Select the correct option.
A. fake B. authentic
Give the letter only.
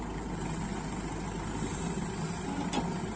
B